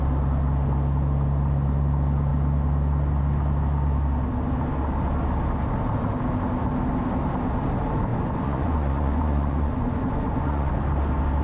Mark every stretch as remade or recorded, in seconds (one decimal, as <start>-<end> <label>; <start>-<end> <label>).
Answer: 0.0-8.1 recorded; 8.1-10.7 remade; 10.7-11.4 recorded